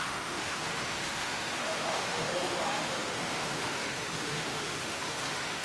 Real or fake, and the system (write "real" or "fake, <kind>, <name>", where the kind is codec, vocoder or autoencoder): fake, autoencoder, DAC-VAE